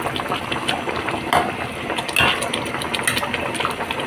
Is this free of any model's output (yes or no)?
yes